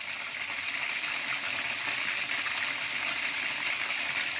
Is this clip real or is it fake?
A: real